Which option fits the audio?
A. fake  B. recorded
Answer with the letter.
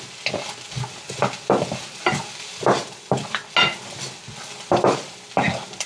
B